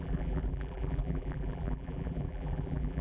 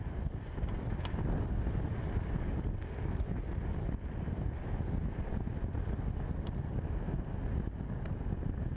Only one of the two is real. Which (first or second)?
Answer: second